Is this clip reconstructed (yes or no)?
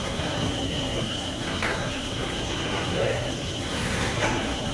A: yes